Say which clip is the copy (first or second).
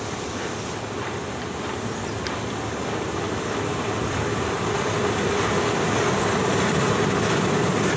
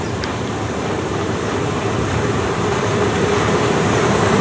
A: second